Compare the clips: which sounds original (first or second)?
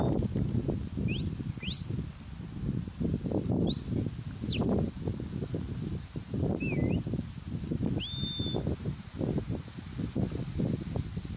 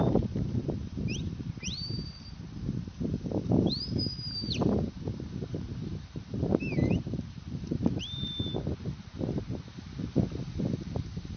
first